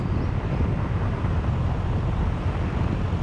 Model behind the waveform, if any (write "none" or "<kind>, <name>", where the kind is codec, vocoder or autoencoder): none